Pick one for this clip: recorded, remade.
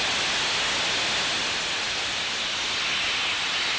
recorded